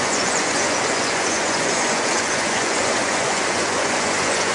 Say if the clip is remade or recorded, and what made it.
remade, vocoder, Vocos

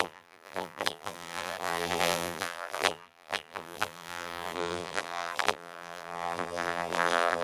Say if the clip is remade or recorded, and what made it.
remade, vocoder, BigVGAN v2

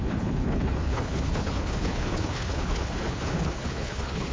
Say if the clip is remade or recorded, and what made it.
remade, codec, HILCodec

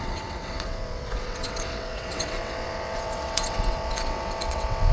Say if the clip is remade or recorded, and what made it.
remade, vocoder, WaveNeXt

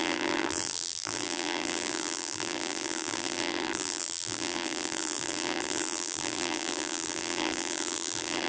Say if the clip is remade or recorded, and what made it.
remade, vocoder, BigVGAN v2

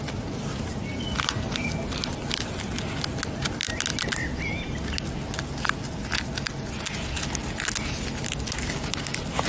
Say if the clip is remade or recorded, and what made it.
recorded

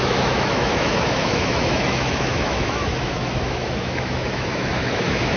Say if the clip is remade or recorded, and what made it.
remade, autoencoder, DAC-VAE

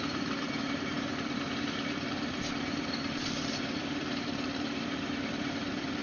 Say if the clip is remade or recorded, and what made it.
remade, vocoder, BigVGAN v2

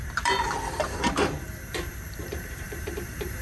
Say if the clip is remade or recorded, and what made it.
remade, vocoder, BigVGAN v2